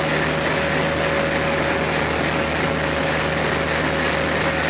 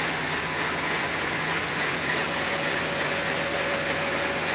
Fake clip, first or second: second